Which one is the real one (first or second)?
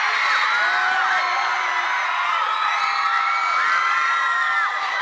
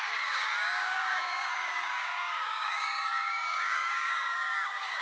first